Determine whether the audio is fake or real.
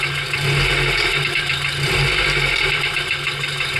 real